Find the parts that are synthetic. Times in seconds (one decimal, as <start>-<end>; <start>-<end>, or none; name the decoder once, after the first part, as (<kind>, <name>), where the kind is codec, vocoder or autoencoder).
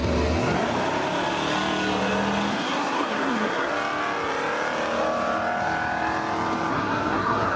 2.5-3.7 (codec, SNAC); 6.7-7.6